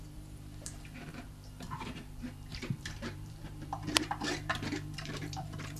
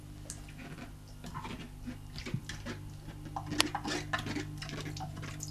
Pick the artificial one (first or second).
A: first